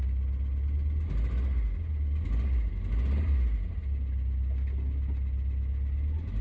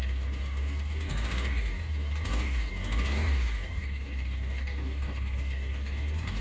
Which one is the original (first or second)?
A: first